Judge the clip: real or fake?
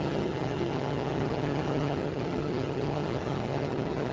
fake